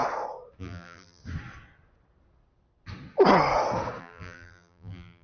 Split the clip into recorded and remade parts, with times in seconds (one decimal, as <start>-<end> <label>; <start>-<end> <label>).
0.0-0.6 recorded; 0.6-1.2 remade; 1.2-4.0 recorded; 4.0-5.2 remade